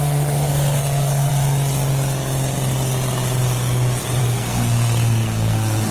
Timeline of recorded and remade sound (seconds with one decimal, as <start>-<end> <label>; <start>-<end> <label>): 0.0-1.3 remade; 1.3-4.2 recorded; 4.2-5.9 remade